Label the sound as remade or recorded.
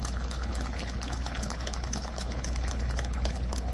remade